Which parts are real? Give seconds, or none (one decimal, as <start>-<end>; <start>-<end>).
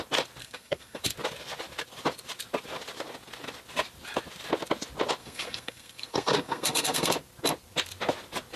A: 0.0-0.4; 1.0-5.2; 7.1-8.6